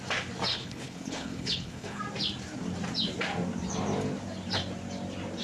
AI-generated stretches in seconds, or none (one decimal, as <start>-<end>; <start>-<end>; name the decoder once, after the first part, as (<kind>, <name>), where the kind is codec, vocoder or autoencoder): 0.5-2.0 (codec, HILCodec)